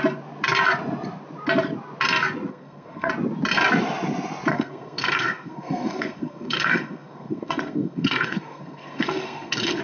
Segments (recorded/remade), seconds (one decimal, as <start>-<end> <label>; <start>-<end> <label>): 0.0-2.5 recorded; 2.5-3.1 remade; 3.1-4.5 recorded; 4.5-9.8 remade